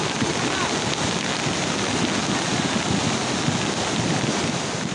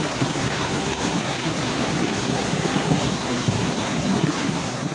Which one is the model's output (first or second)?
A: second